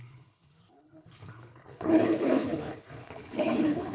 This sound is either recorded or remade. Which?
remade